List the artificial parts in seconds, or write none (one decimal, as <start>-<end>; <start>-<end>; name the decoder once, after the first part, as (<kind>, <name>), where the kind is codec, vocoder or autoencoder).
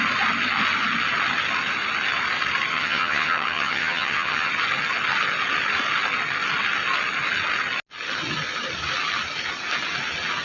2.7-4.5 (vocoder, HiFi-GAN)